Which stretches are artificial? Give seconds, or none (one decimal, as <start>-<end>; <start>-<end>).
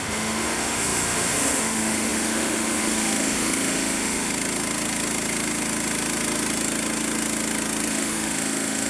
0.0-4.3; 7.9-8.9